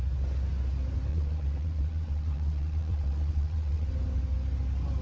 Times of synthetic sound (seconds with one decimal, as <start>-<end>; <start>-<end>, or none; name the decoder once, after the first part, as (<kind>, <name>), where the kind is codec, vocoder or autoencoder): 1.1-3.9 (vocoder, WaveNeXt)